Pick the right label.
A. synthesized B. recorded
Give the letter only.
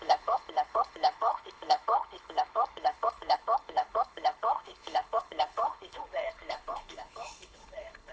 A